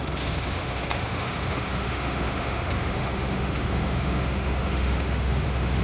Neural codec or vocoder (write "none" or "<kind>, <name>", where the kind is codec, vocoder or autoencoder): autoencoder, DAC-VAE